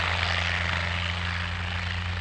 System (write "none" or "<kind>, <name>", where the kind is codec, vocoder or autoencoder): none